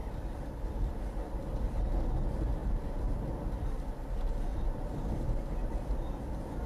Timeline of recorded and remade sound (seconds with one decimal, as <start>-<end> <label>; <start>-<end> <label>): 0.0-0.9 remade; 0.9-2.6 recorded; 2.6-3.1 remade; 3.1-4.5 recorded; 4.5-6.7 remade

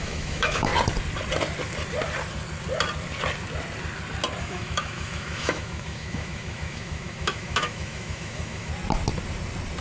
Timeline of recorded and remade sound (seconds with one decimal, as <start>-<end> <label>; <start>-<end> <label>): 0.0-0.7 remade; 0.7-4.4 recorded; 4.4-8.7 remade; 8.7-9.8 recorded